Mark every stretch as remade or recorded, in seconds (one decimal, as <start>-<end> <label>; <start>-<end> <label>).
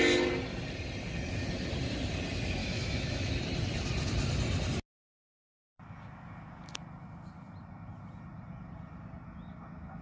0.0-2.6 recorded; 2.6-3.3 remade; 3.3-10.0 recorded